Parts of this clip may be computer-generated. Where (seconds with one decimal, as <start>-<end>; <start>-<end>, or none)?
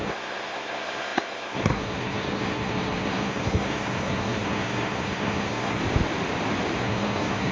0.0-5.8; 6.8-7.5